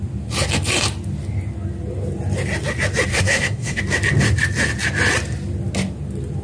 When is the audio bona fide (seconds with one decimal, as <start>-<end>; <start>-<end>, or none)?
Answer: 0.0-3.1; 3.8-6.4